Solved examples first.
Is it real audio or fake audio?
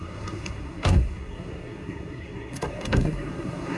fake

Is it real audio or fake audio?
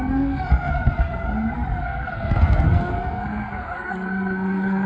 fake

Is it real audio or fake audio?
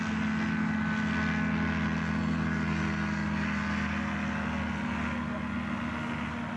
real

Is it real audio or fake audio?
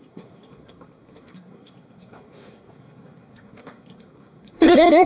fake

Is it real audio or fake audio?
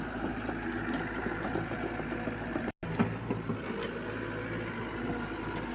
real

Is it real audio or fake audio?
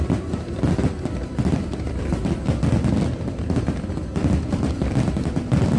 real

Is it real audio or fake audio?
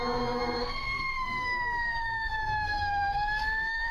fake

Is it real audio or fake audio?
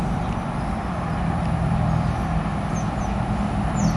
real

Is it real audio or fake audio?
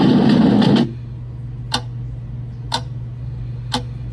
real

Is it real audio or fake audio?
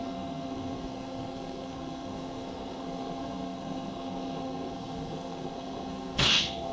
fake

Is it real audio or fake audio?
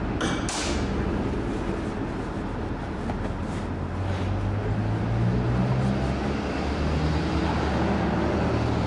real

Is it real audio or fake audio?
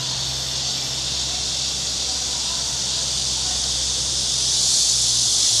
real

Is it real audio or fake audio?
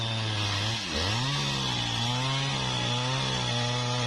real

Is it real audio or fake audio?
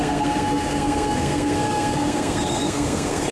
fake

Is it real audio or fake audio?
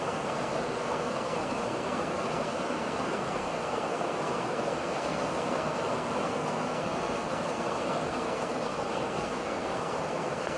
fake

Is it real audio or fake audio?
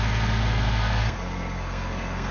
fake